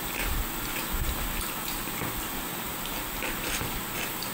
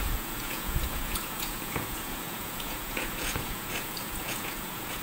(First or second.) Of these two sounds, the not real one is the second